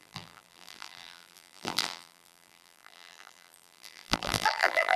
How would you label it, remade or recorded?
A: remade